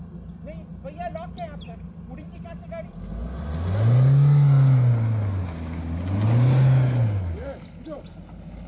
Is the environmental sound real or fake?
real